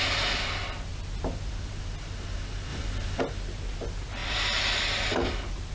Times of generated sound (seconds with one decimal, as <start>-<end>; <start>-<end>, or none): 0.9-1.7; 2.7-3.2; 4.2-5.3